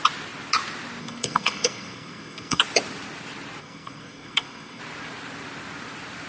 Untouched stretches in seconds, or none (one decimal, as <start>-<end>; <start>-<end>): 0.0-1.0; 2.6-3.6; 4.8-6.3